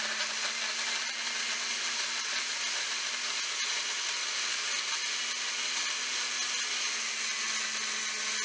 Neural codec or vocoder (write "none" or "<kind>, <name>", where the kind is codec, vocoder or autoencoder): none